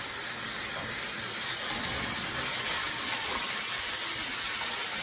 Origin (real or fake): real